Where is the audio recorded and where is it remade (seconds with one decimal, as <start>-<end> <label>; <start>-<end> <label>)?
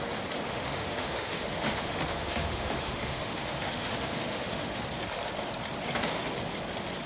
0.0-0.5 recorded; 0.5-4.8 remade; 4.8-7.1 recorded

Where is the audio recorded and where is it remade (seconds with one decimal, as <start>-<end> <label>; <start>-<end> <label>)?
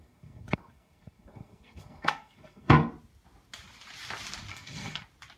0.0-2.9 remade; 2.9-4.5 recorded; 4.5-5.0 remade; 5.0-5.4 recorded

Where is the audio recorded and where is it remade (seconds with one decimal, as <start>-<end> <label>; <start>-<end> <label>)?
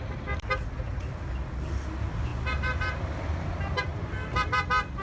0.0-5.0 recorded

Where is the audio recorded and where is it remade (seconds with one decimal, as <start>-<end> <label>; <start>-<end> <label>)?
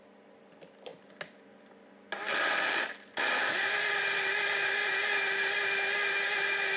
0.0-6.8 recorded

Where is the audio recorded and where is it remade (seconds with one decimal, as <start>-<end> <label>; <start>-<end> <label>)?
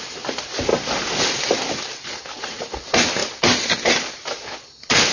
0.0-5.1 recorded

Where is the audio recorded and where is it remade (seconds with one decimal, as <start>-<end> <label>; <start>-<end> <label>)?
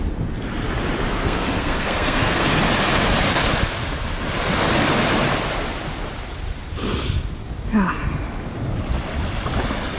0.0-1.1 recorded; 1.1-2.4 remade; 2.4-10.0 recorded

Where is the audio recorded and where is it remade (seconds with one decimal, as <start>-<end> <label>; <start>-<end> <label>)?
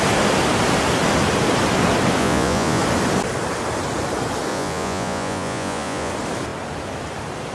0.0-2.2 recorded; 2.2-2.8 remade; 2.8-4.5 recorded; 4.5-6.1 remade; 6.1-7.5 recorded